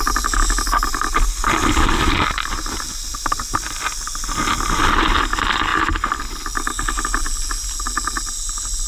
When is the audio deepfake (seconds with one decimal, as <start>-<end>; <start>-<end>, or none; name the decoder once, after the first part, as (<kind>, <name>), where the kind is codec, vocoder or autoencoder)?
none